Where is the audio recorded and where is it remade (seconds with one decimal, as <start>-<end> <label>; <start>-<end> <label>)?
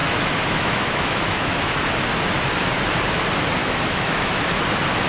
0.0-1.8 remade; 1.8-3.6 recorded; 3.6-4.3 remade; 4.3-5.1 recorded